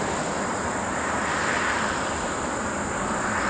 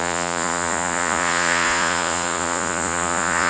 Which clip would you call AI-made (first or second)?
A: second